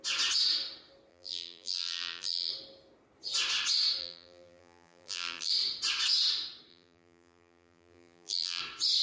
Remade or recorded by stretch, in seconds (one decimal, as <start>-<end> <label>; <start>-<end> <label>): 0.0-1.1 recorded; 1.1-2.5 remade; 2.5-4.0 recorded; 4.0-5.5 remade; 5.5-6.7 recorded; 6.7-8.6 remade; 8.6-9.0 recorded